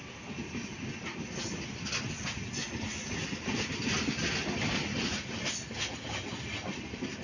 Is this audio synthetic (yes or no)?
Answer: no